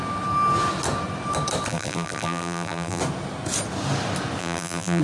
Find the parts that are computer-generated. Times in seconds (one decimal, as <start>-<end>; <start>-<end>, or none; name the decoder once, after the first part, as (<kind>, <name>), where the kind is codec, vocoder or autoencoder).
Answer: 1.7-3.0 (vocoder, BigVGAN v2); 4.4-5.0